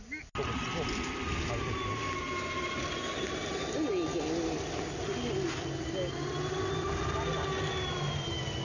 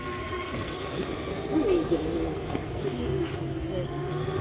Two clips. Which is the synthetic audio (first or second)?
second